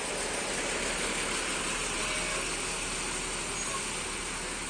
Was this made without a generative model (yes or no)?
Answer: yes